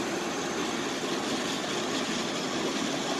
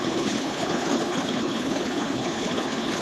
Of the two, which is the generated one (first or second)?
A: second